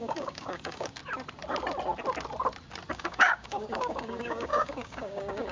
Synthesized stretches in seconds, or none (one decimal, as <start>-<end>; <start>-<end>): 0.0-1.0; 2.9-5.5